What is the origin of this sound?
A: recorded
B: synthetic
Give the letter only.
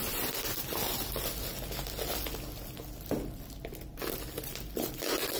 A